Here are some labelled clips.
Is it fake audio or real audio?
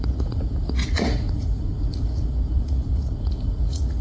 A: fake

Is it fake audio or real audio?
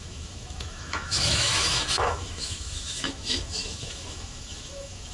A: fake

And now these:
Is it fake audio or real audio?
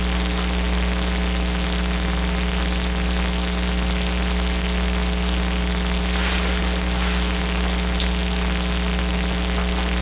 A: real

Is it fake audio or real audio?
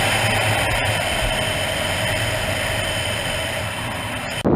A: real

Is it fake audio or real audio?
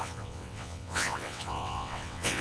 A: fake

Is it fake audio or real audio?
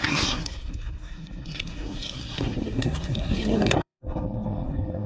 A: fake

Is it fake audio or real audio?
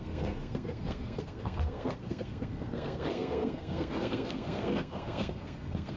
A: fake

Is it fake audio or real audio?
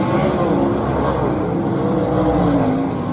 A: real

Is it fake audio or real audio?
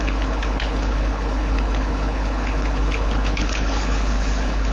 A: fake